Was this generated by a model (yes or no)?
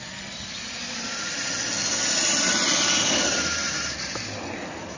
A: no